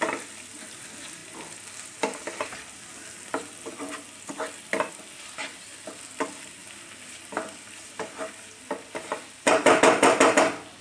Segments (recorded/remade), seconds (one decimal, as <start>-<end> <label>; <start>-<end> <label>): 0.0-6.6 recorded; 6.6-8.2 remade; 8.2-10.8 recorded